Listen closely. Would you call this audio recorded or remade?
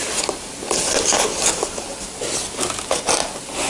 recorded